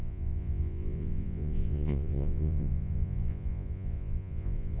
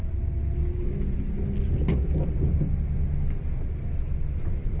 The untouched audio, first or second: second